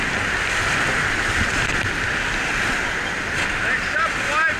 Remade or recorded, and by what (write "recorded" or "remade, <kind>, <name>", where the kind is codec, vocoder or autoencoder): recorded